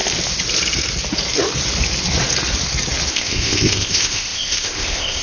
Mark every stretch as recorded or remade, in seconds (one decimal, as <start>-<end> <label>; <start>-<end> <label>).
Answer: 0.0-3.1 recorded; 3.1-5.2 remade

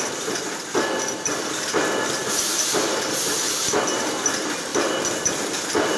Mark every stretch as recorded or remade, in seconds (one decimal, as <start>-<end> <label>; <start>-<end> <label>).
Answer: 0.0-2.2 recorded; 2.2-3.6 remade; 3.6-4.7 recorded; 4.7-6.0 remade

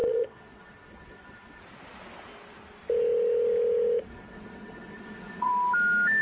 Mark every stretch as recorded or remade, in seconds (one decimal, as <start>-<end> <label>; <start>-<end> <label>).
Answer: 0.0-1.6 remade; 1.6-4.1 recorded; 4.1-5.5 remade; 5.5-6.2 recorded

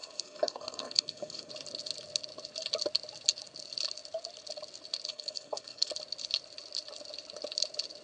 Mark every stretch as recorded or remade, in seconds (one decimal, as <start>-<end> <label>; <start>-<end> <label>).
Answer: 0.0-1.5 remade; 1.5-5.1 recorded; 5.1-5.9 remade; 5.9-8.0 recorded

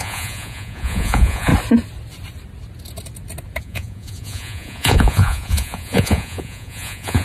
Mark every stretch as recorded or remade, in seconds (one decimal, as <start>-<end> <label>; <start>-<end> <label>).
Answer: 0.0-1.5 remade; 1.5-3.6 recorded; 3.6-7.2 remade

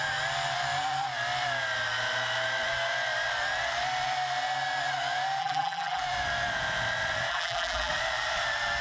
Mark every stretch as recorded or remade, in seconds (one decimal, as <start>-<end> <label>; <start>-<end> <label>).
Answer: 0.0-5.4 recorded; 5.4-6.0 remade; 6.0-7.3 recorded; 7.3-7.9 remade; 7.9-8.8 recorded

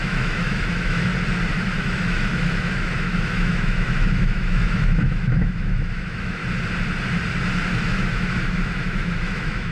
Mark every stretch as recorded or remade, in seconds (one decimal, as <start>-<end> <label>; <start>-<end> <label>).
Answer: 0.0-1.1 remade; 1.1-1.8 recorded; 1.8-6.4 remade; 6.4-7.8 recorded; 7.8-9.7 remade

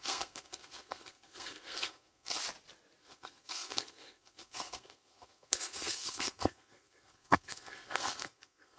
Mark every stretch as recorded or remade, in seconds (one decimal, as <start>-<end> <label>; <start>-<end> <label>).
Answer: 0.0-2.4 remade; 2.4-3.0 recorded; 3.0-8.8 remade